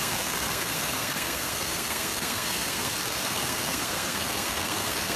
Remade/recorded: remade